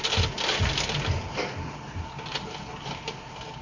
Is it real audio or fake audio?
real